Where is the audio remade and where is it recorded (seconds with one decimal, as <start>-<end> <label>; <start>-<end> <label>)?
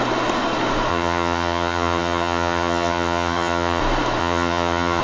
0.0-0.9 recorded; 0.9-3.8 remade; 3.8-4.2 recorded; 4.2-5.0 remade